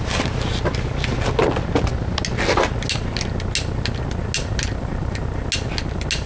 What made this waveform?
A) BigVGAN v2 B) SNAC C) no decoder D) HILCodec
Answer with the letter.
C